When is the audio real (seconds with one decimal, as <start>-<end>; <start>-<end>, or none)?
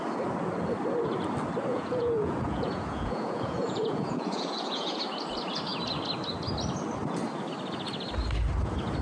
0.0-1.7; 5.0-9.0